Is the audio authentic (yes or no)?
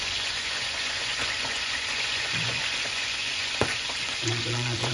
no